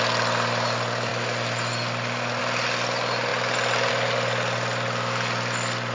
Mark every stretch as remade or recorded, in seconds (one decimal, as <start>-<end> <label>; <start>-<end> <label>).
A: 0.0-5.9 recorded